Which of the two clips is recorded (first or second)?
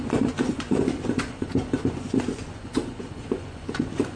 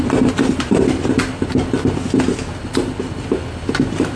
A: second